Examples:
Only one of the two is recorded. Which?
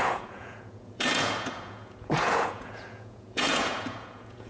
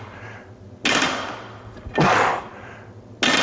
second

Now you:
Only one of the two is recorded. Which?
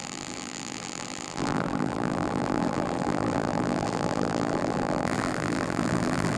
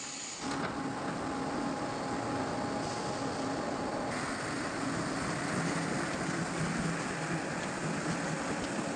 second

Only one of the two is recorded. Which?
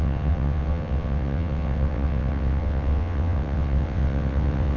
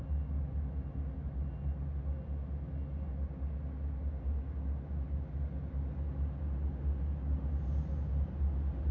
second